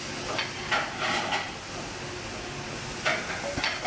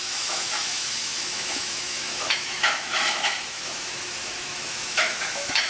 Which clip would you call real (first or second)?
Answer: first